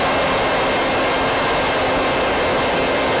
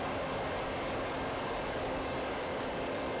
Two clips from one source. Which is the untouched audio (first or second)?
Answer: first